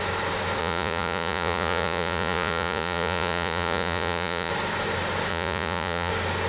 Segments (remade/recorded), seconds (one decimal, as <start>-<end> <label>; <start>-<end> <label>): 0.0-0.6 recorded; 0.6-4.5 remade; 4.5-5.3 recorded; 5.3-6.1 remade; 6.1-6.5 recorded